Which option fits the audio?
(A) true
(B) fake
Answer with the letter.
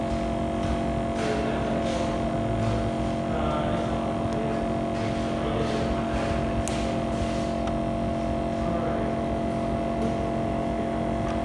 A